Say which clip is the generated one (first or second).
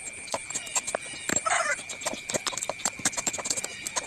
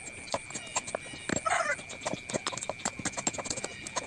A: first